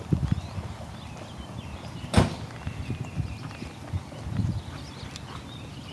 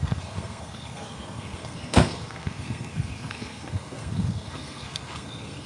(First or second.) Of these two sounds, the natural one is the first